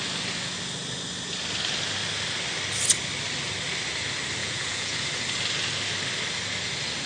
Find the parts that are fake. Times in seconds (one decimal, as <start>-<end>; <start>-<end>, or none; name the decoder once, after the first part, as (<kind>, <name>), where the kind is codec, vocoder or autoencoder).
4.4-5.1 (vocoder, Vocos)